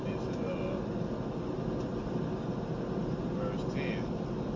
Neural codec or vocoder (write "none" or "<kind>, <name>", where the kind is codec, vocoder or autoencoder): none